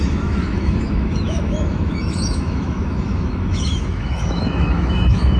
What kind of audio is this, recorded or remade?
remade